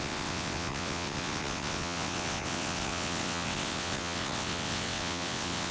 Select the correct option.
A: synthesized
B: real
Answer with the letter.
A